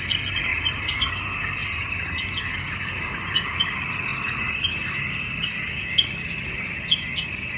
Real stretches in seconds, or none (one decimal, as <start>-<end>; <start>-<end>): 0.0-0.5; 1.1-4.1; 5.2-7.6